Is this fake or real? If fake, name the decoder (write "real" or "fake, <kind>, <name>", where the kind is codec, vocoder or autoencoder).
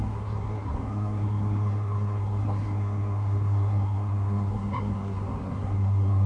fake, codec, SNAC